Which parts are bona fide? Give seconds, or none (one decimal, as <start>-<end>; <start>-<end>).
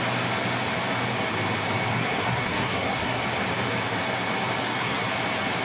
0.0-1.9; 3.2-4.6; 5.1-5.6